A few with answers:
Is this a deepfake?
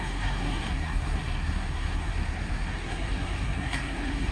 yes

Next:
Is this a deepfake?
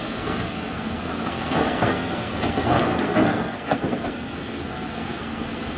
yes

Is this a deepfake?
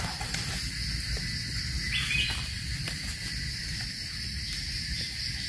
no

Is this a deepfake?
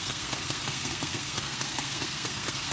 yes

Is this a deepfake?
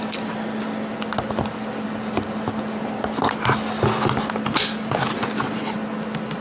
no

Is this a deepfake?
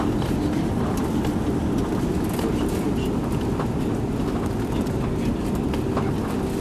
no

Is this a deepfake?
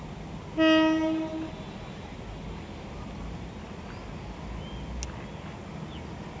no